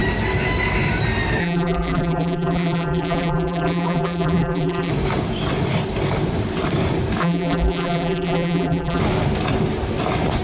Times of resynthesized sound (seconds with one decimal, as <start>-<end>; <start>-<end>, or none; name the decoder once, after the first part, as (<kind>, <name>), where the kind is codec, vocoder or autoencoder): 1.4-4.9 (vocoder, BigVGAN v2); 7.2-9.0